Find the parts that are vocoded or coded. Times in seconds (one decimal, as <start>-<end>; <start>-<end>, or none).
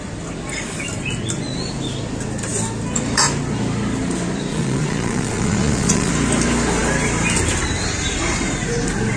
4.5-6.1